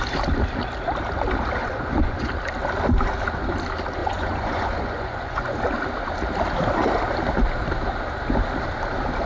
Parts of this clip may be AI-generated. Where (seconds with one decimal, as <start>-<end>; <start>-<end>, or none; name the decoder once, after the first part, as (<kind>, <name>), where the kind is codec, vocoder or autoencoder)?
1.6-2.3 (vocoder, Vocos); 4.0-5.6